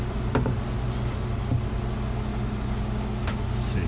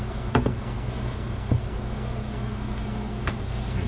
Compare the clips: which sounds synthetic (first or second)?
second